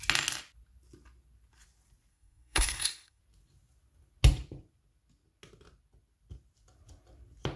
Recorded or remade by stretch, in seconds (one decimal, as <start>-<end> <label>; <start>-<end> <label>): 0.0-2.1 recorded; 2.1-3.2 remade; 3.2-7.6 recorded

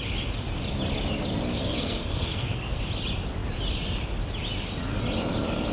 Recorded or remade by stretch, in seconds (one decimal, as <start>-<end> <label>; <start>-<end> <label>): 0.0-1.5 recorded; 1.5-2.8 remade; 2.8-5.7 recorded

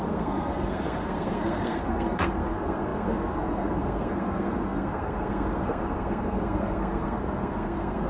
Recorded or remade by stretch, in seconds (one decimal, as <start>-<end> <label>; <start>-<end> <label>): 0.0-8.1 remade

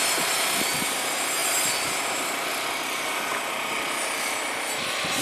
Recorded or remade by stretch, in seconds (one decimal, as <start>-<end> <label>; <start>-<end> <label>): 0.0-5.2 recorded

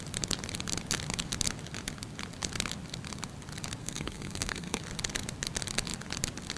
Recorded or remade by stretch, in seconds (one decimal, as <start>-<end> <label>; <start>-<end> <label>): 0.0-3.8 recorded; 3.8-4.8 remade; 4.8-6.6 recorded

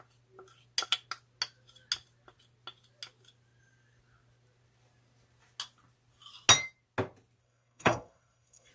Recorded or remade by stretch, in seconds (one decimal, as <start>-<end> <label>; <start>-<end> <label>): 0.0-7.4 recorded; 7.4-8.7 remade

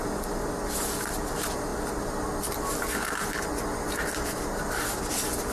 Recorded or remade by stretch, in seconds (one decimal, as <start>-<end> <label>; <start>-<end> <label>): 0.0-5.5 recorded